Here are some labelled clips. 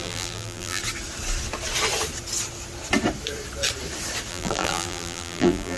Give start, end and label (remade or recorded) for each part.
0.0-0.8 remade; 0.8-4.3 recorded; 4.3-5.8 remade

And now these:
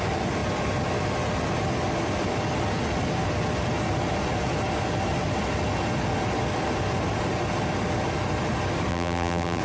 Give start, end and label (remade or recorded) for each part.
0.0-8.9 recorded; 8.9-9.6 remade

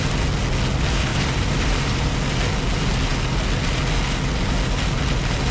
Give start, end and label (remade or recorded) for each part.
0.0-1.1 recorded; 1.1-2.1 remade; 2.1-5.5 recorded

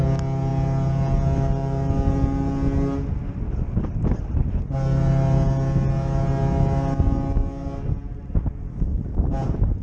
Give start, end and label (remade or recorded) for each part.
0.0-9.8 recorded

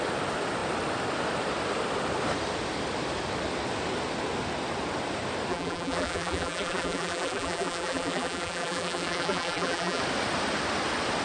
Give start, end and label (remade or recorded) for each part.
0.0-5.5 recorded; 5.5-10.0 remade; 10.0-11.2 recorded